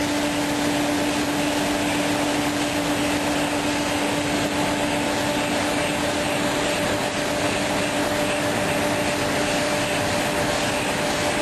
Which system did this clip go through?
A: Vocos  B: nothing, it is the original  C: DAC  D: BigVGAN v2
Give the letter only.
B